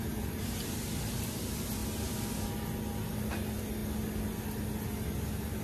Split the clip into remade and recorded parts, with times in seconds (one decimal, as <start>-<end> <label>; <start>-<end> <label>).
0.0-5.6 recorded